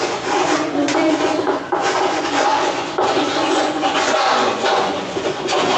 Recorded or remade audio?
remade